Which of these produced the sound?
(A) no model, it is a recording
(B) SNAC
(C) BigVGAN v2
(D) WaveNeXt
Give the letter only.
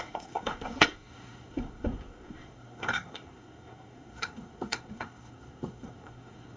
B